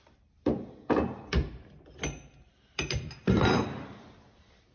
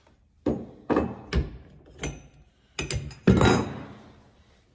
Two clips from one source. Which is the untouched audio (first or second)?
second